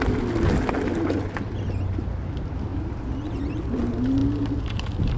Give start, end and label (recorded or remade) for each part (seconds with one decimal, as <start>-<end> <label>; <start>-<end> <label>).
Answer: 0.0-5.2 recorded